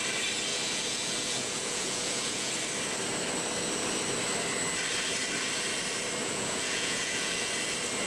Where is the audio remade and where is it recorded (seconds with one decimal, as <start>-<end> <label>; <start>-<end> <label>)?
0.0-0.5 recorded; 0.5-2.5 remade; 2.5-6.2 recorded; 6.2-7.5 remade; 7.5-8.1 recorded